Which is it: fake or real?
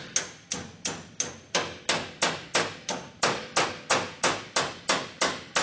real